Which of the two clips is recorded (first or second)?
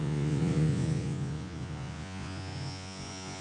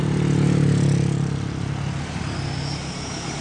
second